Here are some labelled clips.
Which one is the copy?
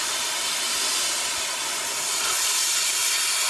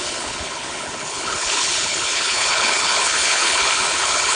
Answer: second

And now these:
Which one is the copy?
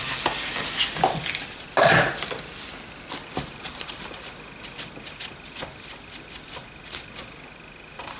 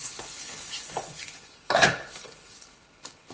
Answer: second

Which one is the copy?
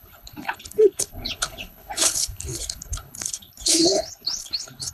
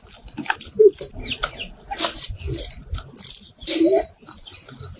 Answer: first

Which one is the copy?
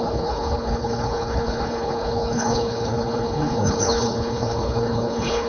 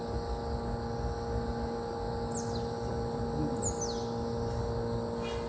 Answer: first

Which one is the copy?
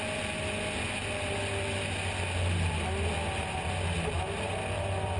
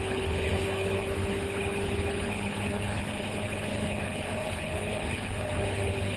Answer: second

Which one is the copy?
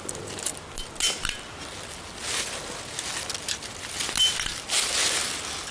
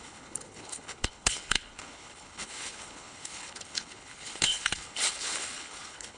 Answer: second